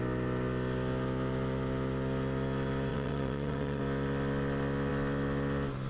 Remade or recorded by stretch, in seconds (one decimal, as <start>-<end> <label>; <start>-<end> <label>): 0.0-2.9 recorded; 2.9-3.8 remade; 3.8-5.9 recorded